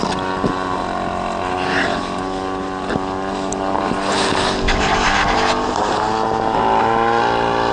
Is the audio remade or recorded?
recorded